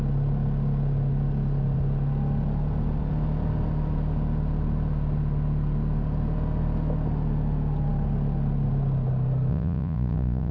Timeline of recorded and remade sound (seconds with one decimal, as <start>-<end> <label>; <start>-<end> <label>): 0.0-9.5 recorded; 9.5-10.5 remade